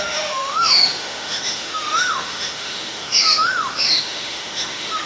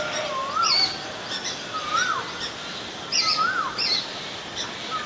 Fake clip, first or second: first